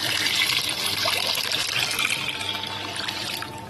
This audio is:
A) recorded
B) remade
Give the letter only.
B